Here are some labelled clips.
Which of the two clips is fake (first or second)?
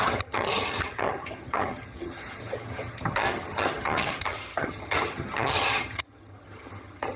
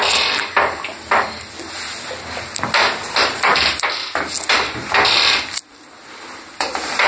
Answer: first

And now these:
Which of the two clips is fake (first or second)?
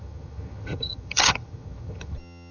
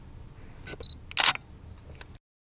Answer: first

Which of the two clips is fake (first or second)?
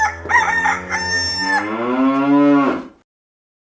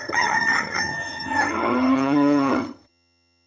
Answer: second